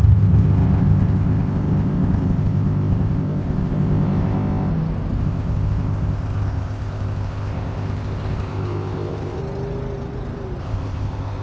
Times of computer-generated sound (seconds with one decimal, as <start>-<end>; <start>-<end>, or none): 0.0-4.7; 5.2-9.4; 10.6-11.4